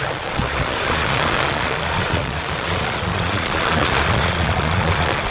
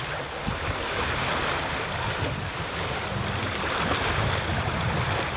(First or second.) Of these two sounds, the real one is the second